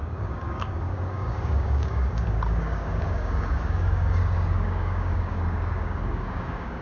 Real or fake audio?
fake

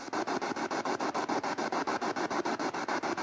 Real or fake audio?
fake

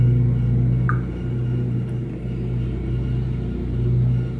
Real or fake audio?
real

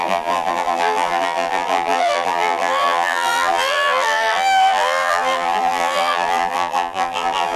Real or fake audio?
fake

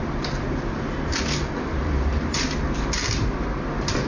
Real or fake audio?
fake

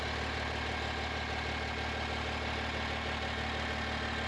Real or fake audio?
real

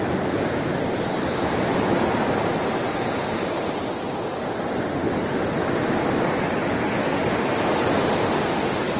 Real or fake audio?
real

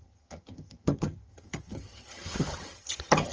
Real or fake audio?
fake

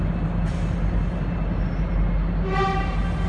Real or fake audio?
real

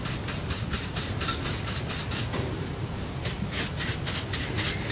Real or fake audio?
real